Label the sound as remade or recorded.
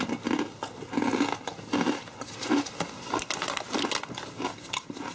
recorded